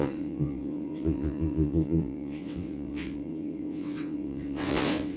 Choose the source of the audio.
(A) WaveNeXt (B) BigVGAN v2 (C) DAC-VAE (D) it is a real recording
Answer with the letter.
A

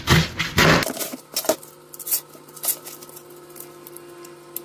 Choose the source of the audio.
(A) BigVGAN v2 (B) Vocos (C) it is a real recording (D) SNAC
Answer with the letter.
C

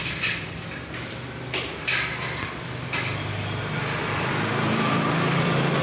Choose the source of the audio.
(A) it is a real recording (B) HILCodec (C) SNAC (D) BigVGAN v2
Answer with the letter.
D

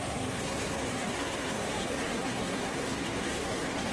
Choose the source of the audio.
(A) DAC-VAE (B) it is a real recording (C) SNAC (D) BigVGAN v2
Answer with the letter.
C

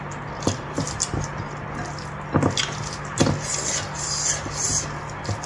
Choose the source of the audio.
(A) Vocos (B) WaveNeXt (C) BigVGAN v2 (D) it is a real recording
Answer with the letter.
D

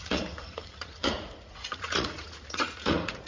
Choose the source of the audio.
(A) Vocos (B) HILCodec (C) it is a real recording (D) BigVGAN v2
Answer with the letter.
A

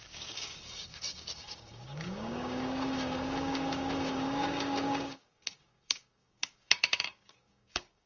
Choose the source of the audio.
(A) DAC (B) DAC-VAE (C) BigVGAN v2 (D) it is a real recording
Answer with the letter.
A